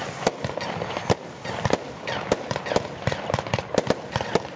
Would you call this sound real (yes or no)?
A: yes